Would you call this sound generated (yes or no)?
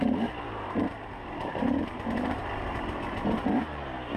yes